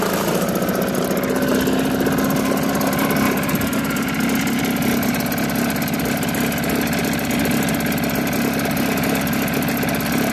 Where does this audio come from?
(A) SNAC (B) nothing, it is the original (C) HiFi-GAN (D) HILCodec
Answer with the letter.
B